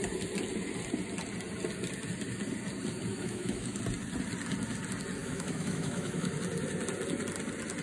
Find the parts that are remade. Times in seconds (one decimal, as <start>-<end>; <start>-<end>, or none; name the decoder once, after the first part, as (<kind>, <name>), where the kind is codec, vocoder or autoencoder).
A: 3.1-3.8 (autoencoder, DAC-VAE); 5.2-6.3